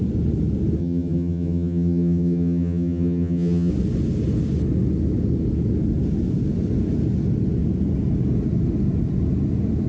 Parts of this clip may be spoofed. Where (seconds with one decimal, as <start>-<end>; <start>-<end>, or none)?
0.8-3.7